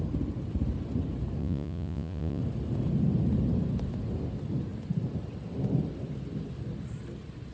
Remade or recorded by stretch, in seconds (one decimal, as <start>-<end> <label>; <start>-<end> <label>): 0.0-1.4 recorded; 1.4-2.4 remade; 2.4-7.5 recorded